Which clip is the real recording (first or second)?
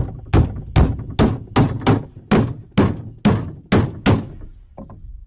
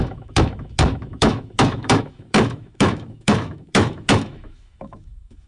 first